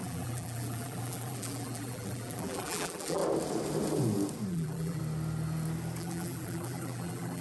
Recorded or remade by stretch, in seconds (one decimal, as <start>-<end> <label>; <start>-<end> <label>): 0.0-3.2 remade; 3.2-4.5 recorded; 4.5-5.0 remade; 5.0-6.0 recorded; 6.0-7.4 remade